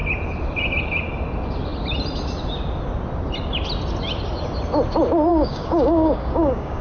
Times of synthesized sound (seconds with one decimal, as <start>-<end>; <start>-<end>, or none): 5.3-6.8